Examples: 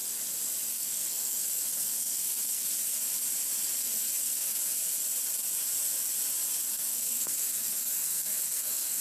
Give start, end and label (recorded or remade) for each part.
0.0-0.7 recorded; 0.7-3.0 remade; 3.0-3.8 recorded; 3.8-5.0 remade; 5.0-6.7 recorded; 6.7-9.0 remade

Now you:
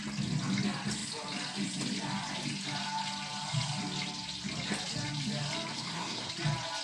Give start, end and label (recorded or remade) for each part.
0.0-5.7 recorded; 5.7-6.3 remade; 6.3-6.8 recorded

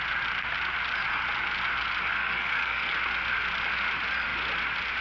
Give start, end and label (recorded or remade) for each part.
0.0-2.1 recorded; 2.1-2.9 remade; 2.9-5.0 recorded

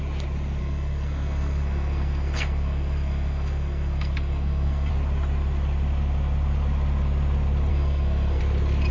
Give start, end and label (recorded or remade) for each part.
0.0-0.6 recorded; 0.6-4.9 remade; 4.9-7.7 recorded; 7.7-8.4 remade; 8.4-8.9 recorded

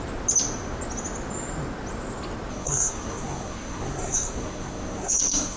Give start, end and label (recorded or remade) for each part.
0.0-2.5 recorded; 2.5-5.6 remade

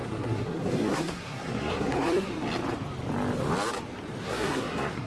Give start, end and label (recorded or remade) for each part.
0.0-2.3 remade; 2.3-4.2 recorded; 4.2-5.1 remade

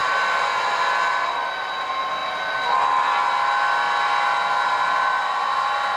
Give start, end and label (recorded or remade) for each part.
0.0-6.0 recorded